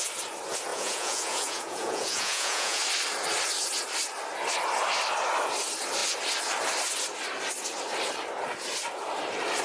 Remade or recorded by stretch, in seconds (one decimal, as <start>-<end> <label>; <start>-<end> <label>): 0.0-0.7 recorded; 0.7-2.8 remade; 2.8-9.6 recorded